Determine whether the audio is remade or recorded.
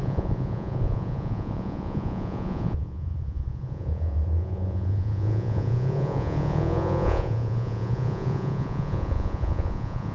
remade